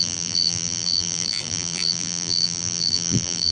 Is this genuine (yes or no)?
no